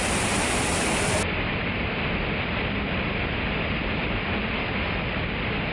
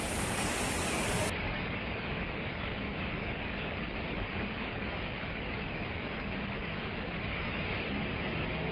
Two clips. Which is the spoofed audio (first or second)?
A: second